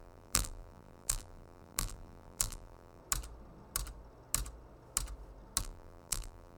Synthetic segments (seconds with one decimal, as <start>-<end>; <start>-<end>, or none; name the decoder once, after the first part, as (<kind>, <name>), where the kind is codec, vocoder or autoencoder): 0.0-3.0 (vocoder, BigVGAN v2); 5.6-6.6